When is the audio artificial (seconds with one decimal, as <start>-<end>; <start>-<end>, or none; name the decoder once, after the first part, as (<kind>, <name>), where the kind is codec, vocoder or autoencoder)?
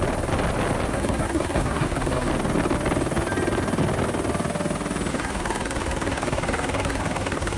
0.9-2.3 (codec, SNAC); 5.1-7.6